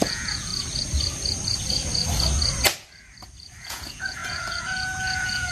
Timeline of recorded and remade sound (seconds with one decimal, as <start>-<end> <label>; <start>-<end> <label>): 0.0-0.5 remade; 0.5-3.7 recorded; 3.7-5.5 remade